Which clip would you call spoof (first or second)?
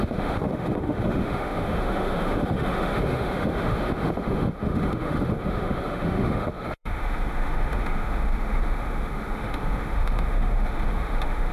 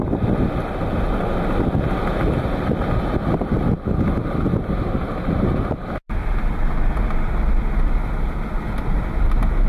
first